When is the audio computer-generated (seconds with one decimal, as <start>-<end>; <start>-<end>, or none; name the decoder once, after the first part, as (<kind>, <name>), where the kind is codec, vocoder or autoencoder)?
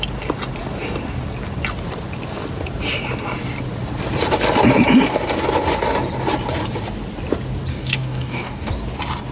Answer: 7.7-8.7 (codec, DAC)